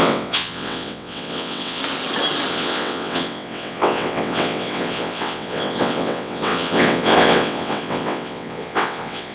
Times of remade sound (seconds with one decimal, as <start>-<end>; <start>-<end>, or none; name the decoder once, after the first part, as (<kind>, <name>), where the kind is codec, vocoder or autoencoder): 0.0-1.8 (vocoder, WaveNeXt); 2.5-9.3